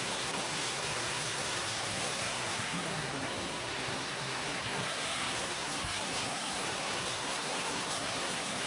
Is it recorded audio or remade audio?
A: remade